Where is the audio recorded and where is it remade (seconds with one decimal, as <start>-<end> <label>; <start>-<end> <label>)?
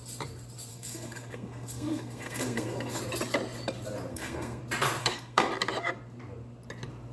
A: 0.0-0.7 recorded; 0.7-3.0 remade; 3.0-4.1 recorded; 4.1-4.6 remade; 4.6-5.0 recorded; 5.0-5.5 remade; 5.5-7.1 recorded